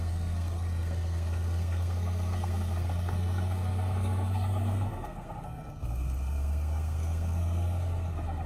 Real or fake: fake